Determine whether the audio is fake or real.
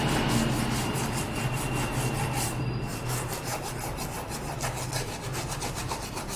real